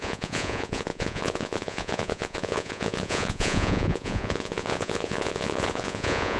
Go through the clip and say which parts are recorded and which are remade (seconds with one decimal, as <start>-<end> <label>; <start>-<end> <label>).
0.0-6.4 remade